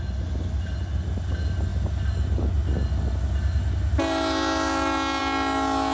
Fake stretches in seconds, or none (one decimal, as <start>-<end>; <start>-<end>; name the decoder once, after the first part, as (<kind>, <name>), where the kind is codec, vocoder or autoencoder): none